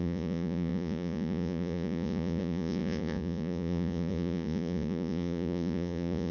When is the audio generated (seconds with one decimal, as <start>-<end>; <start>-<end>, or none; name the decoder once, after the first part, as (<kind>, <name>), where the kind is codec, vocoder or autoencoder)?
0.0-6.3 (vocoder, Vocos)